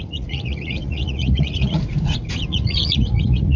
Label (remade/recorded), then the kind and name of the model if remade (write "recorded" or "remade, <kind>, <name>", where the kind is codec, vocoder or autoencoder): remade, vocoder, Vocos